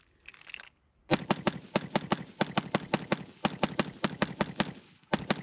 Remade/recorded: recorded